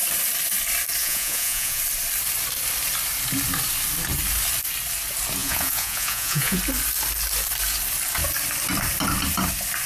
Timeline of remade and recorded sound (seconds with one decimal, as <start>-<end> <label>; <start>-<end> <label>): 0.0-1.0 recorded; 1.0-1.8 remade; 1.8-5.4 recorded; 5.4-6.6 remade; 6.6-9.9 recorded